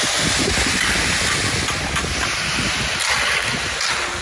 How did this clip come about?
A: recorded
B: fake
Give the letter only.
A